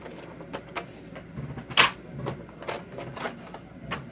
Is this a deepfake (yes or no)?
no